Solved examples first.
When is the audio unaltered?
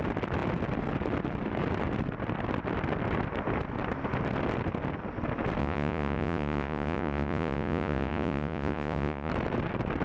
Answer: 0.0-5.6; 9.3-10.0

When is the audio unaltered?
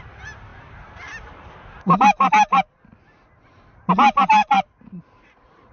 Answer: 0.0-4.4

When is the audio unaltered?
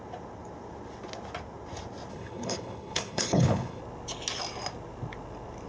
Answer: 0.0-2.1; 3.8-5.7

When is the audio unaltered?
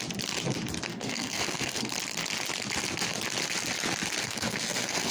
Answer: 0.0-0.9; 1.9-4.2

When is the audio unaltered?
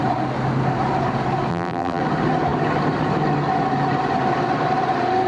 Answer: 0.0-1.5; 2.0-5.3